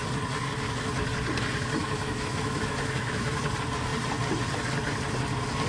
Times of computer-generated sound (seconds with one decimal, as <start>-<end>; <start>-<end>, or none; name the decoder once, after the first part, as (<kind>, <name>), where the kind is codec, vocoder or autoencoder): 1.8-3.4 (autoencoder, DAC-VAE)